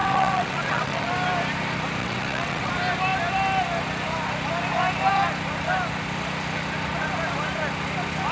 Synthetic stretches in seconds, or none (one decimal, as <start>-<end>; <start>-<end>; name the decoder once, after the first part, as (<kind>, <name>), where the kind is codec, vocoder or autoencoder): 0.0-1.1 (vocoder, WaveNeXt); 2.0-2.7

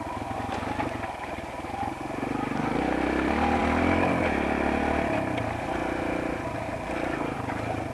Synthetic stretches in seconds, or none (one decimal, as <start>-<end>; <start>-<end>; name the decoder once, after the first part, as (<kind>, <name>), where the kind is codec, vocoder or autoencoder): 3.6-4.1 (vocoder, BigVGAN v2)

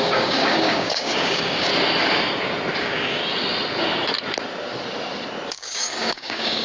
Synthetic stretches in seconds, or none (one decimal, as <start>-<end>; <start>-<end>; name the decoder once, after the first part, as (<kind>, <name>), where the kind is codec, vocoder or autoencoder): 0.0-1.7 (codec, DAC); 2.8-3.2; 5.5-6.6

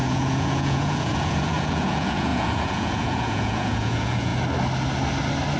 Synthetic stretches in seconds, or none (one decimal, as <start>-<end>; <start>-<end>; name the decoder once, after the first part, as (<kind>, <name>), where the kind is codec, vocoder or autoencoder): 0.0-4.3 (vocoder, Vocos)

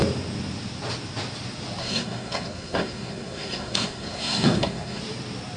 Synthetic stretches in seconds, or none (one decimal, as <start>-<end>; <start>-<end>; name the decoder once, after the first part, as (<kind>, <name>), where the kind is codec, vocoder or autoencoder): 1.8-5.0 (codec, SNAC)

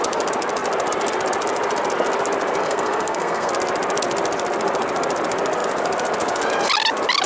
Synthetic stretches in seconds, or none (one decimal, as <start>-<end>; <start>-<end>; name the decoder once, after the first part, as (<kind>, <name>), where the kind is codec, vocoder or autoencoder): 2.6-3.5 (codec, SNAC)

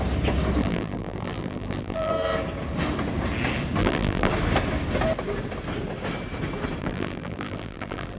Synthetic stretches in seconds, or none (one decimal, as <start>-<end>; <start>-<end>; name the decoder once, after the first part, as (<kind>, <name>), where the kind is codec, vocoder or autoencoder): 0.6-2.1 (vocoder, BigVGAN v2); 3.8-4.3; 6.8-8.2